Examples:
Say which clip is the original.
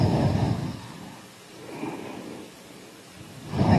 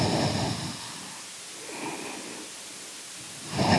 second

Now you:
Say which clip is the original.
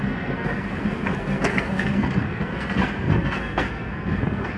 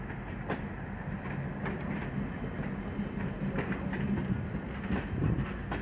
second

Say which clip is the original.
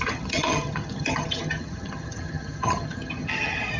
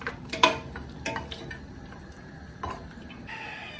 second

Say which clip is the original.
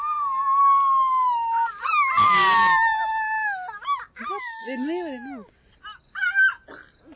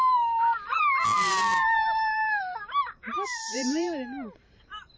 first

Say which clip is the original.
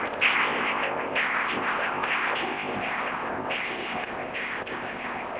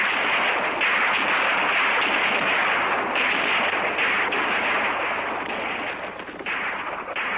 second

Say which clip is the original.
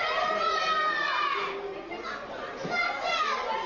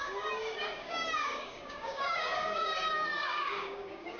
first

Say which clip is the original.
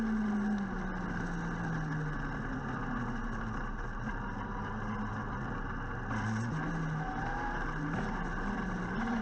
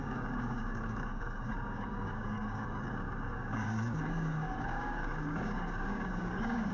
first